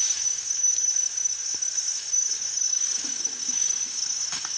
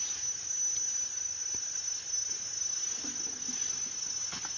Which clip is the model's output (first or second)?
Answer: first